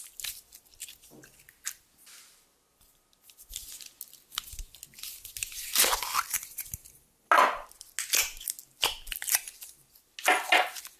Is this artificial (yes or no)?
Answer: no